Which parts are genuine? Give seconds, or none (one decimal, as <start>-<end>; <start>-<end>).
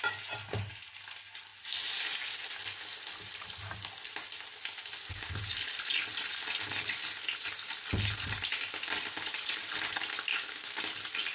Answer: 0.0-10.3; 10.8-11.3